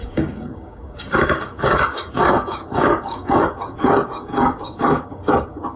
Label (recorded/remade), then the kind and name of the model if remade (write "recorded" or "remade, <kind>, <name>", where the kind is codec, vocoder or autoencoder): remade, codec, DAC